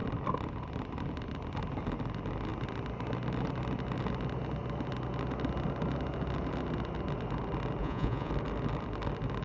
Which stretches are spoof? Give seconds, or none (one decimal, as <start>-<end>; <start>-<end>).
7.8-8.3